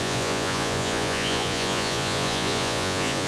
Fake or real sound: fake